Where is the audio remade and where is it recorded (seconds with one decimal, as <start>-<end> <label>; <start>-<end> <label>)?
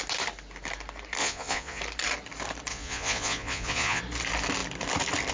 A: 0.0-1.2 recorded; 1.2-1.8 remade; 1.8-2.7 recorded; 2.7-4.0 remade; 4.0-5.3 recorded